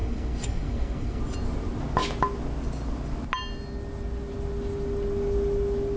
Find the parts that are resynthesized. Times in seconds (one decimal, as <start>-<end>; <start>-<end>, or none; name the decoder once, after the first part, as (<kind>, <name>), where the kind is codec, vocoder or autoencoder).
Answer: 0.0-1.2 (codec, SNAC)